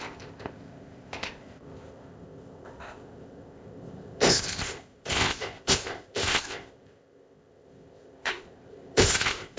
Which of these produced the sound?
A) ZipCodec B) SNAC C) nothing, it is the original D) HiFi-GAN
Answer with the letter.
A